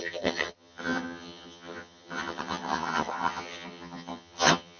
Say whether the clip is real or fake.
fake